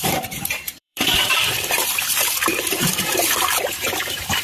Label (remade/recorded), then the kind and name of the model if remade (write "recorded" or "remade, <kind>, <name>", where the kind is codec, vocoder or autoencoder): remade, vocoder, BigVGAN v2